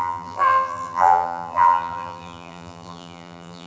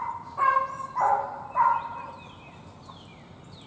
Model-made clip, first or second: first